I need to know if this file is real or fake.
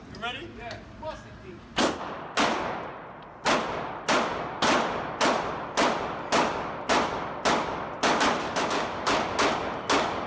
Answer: real